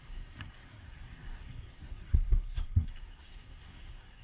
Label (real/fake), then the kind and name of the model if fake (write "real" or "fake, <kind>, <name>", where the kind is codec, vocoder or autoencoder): fake, codec, SNAC